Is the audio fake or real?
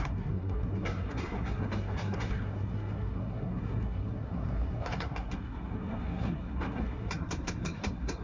fake